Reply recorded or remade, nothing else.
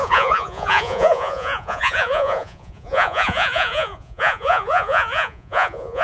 remade